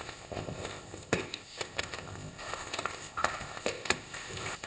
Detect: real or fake fake